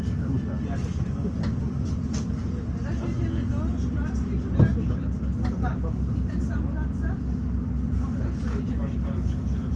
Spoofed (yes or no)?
no